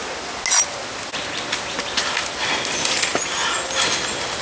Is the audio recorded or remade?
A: recorded